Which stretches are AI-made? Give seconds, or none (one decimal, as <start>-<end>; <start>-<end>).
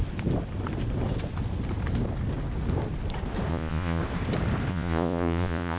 3.5-4.0; 4.7-5.8